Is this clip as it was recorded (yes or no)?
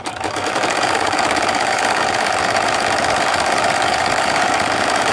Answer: no